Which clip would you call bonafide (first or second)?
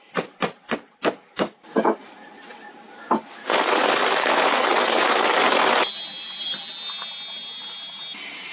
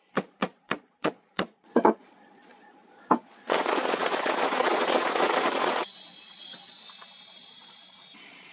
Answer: first